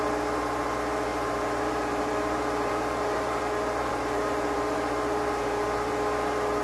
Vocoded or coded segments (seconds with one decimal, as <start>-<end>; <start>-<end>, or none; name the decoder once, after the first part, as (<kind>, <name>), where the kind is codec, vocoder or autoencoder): 1.1-3.4 (vocoder, BigVGAN v2); 3.9-5.9